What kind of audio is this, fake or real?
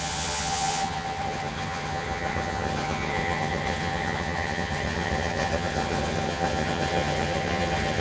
fake